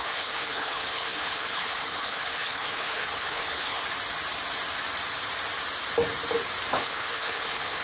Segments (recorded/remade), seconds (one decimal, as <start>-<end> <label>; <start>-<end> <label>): 0.0-3.8 remade; 3.8-6.7 recorded; 6.7-7.8 remade